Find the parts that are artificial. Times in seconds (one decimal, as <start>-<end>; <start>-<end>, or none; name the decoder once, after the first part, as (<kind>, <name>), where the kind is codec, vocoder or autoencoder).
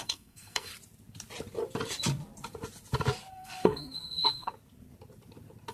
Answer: 0.0-0.7 (codec, SNAC); 3.3-4.5